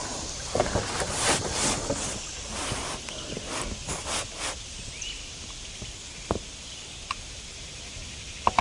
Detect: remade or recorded recorded